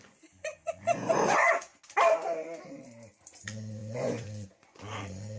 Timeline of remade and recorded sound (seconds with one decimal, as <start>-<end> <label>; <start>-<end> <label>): 0.0-1.7 remade; 1.7-3.4 recorded; 3.4-5.4 remade